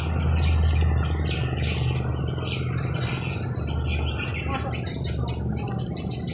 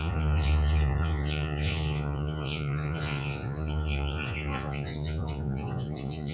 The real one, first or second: first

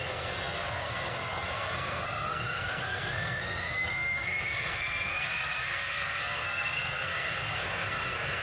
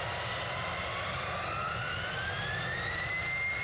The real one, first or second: second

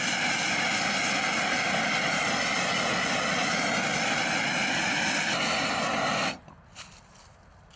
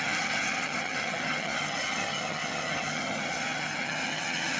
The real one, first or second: first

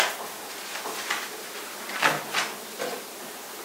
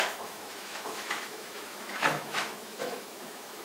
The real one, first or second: first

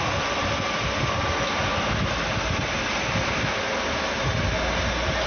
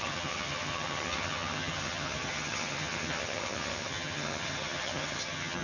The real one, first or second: first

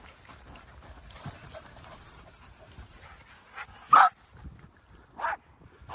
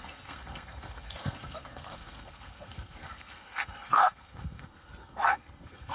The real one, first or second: first